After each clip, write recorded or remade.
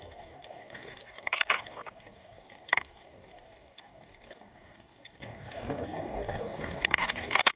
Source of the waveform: remade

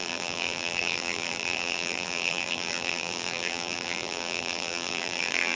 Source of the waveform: remade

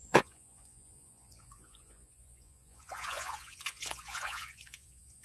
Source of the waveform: remade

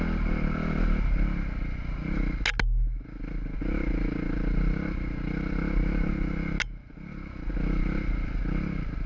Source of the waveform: recorded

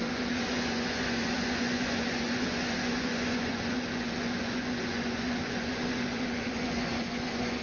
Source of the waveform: remade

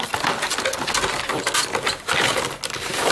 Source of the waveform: recorded